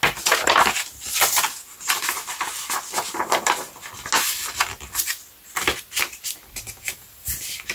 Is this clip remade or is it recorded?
recorded